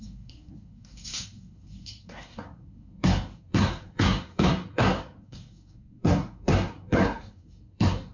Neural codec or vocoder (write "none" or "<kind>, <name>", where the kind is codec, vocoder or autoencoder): codec, SNAC